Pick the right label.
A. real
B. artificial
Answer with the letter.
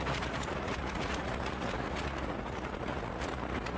B